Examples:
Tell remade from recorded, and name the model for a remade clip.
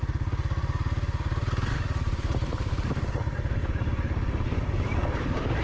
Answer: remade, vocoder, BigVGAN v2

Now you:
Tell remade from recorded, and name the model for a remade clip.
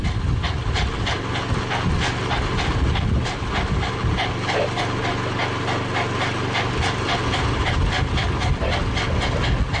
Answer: recorded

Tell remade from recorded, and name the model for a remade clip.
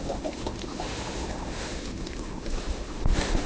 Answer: remade, autoencoder, DAC-VAE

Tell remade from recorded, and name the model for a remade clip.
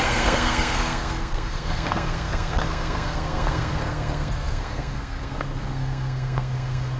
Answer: remade, codec, SNAC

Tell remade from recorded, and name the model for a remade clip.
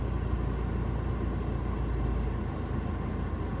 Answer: recorded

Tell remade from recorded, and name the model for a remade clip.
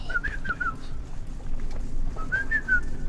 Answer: recorded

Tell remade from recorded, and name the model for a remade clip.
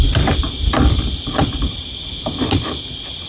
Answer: recorded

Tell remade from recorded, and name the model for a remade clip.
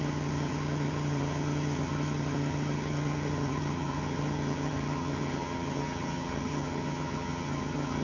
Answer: remade, vocoder, HiFi-GAN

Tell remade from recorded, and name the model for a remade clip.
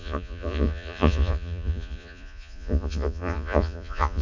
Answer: remade, vocoder, Vocos